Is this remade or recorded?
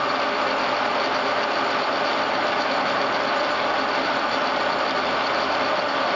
recorded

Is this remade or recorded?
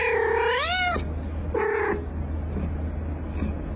recorded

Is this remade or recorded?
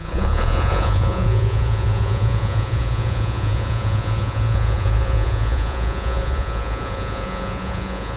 remade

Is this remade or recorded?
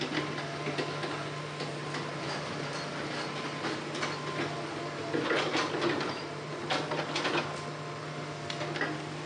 recorded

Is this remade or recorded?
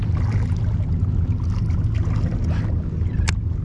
recorded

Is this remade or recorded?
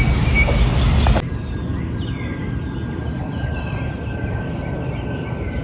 recorded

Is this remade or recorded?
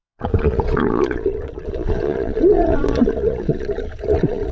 remade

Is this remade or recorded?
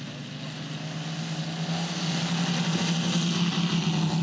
recorded